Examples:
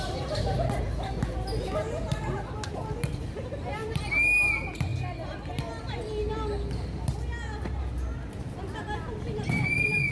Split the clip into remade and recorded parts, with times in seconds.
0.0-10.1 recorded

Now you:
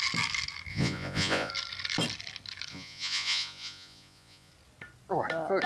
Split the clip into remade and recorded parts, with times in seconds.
0.0-0.7 recorded; 0.7-1.5 remade; 1.5-2.7 recorded; 2.7-4.5 remade; 4.5-5.7 recorded

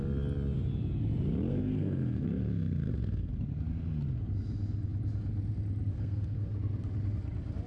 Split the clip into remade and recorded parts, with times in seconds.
0.0-1.5 recorded; 1.5-3.3 remade; 3.3-5.9 recorded; 5.9-6.6 remade; 6.6-7.7 recorded

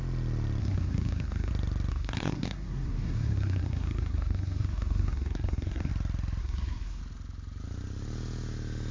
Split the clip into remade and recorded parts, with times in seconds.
0.0-0.6 recorded; 0.6-1.5 remade; 1.5-1.9 recorded; 1.9-5.9 remade; 5.9-6.4 recorded; 6.4-7.0 remade; 7.0-8.9 recorded

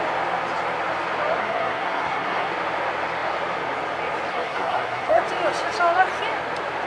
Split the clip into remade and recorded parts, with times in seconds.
0.0-1.4 recorded; 1.4-2.5 remade; 2.5-4.3 recorded; 4.3-5.2 remade; 5.2-6.9 recorded

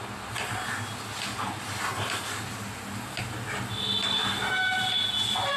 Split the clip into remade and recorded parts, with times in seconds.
0.0-5.6 recorded

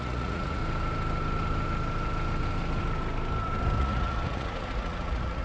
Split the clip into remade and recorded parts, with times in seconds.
0.0-0.6 remade; 0.6-3.8 recorded; 3.8-5.4 remade